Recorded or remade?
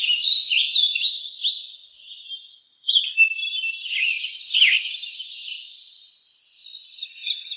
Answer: recorded